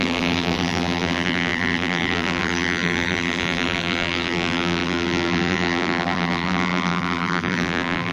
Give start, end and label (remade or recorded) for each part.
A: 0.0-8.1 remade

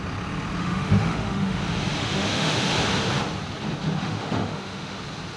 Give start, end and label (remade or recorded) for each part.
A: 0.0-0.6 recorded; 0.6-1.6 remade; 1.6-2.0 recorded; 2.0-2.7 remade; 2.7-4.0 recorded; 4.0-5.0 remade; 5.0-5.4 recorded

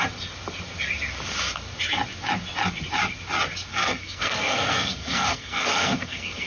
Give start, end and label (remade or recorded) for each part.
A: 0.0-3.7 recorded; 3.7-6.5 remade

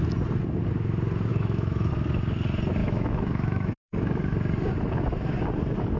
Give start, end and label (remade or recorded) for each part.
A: 0.0-1.3 recorded; 1.3-1.9 remade; 1.9-2.8 recorded; 2.8-4.2 remade; 4.2-6.0 recorded

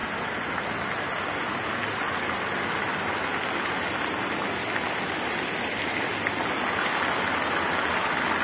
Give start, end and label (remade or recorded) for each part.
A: 0.0-8.4 recorded